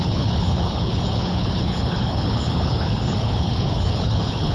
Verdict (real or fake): fake